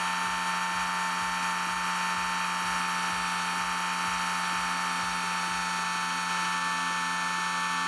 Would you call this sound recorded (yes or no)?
yes